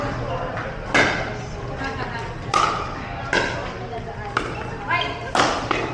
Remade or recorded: recorded